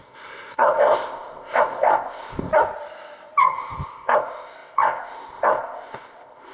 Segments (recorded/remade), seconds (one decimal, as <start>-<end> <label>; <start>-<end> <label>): 0.0-2.5 remade; 2.5-3.4 recorded; 3.4-6.5 remade